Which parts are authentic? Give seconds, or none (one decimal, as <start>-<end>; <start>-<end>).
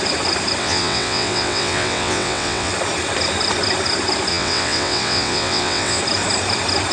0.0-0.6; 2.7-4.3; 6.0-6.9